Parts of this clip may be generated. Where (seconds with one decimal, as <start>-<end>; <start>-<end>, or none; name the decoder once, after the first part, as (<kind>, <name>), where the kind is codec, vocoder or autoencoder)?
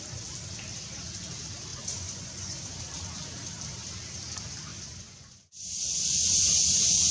1.7-2.8 (vocoder, Vocos); 4.7-6.0